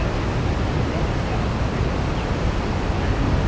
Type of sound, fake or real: real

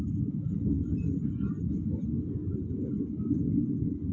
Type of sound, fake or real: real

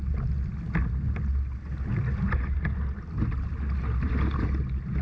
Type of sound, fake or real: real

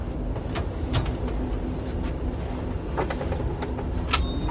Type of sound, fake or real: real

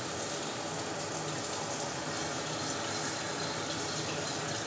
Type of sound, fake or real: fake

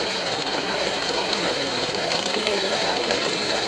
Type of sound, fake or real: fake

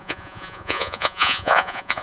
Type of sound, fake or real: fake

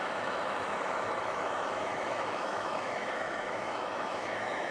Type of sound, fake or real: fake